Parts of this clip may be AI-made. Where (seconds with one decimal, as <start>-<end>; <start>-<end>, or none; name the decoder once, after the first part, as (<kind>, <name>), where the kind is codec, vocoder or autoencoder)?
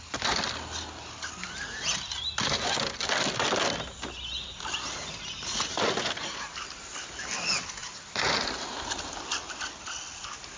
none